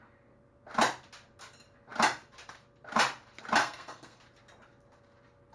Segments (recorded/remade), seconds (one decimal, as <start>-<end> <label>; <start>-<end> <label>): 0.0-3.6 recorded; 3.6-4.2 remade; 4.2-5.5 recorded